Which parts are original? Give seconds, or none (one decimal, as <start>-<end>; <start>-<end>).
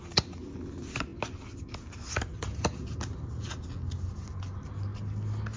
0.0-5.6